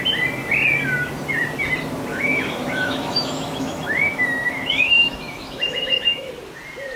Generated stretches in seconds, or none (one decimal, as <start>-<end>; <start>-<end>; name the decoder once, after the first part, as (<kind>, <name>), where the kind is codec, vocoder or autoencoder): 2.1-6.3 (autoencoder, DAC-VAE)